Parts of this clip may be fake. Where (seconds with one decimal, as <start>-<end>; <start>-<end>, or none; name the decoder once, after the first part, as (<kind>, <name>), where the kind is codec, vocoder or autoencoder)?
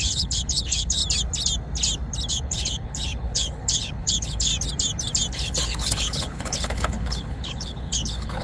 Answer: 0.0-1.0 (codec, HILCodec); 2.3-4.5; 5.3-8.4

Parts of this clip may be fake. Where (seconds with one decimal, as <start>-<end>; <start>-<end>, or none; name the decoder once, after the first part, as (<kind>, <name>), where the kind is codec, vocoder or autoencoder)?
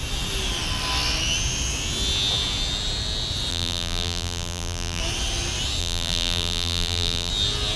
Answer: 3.5-5.0 (vocoder, BigVGAN v2); 5.8-7.3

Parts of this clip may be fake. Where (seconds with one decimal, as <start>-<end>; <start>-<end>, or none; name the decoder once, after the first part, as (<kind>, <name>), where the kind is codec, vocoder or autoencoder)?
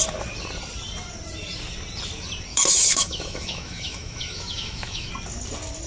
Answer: 2.5-5.1 (autoencoder, DAC-VAE)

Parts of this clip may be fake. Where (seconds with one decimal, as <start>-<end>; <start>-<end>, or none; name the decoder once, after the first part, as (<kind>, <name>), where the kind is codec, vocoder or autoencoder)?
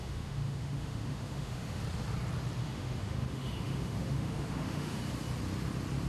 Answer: 0.0-1.8 (autoencoder, DAC-VAE); 2.6-5.0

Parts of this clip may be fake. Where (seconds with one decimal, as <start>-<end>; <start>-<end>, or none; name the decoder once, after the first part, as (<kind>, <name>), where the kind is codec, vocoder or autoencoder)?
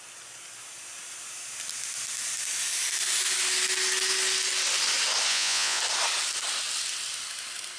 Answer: 5.3-5.8 (vocoder, Vocos)